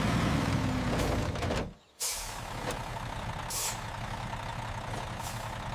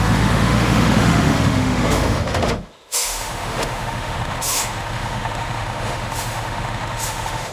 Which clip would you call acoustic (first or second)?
first